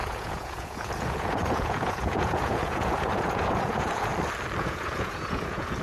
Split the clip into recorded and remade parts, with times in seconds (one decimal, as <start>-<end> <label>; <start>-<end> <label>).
0.0-4.1 remade; 4.1-4.6 recorded; 4.6-5.8 remade